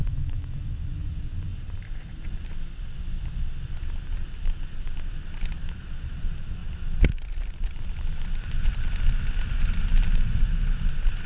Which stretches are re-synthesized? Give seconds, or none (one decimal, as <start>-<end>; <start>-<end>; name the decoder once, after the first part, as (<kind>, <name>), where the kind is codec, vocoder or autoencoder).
0.0-1.0 (autoencoder, DAC-VAE)